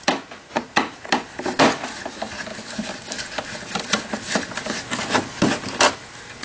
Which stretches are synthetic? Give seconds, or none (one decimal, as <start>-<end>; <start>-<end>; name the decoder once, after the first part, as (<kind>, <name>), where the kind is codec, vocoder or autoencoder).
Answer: 0.4-1.1 (vocoder, Vocos)